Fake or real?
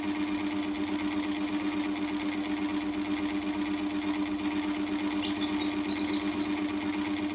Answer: real